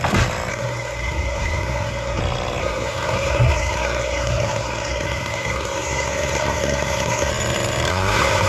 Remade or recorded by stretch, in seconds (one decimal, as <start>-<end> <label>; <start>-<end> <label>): 0.0-0.5 recorded; 0.5-2.2 remade; 2.2-2.6 recorded; 2.6-7.3 remade; 7.3-7.9 recorded; 7.9-8.5 remade